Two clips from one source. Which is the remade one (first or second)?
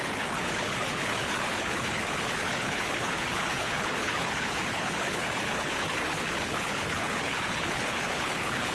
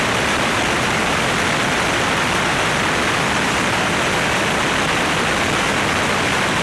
first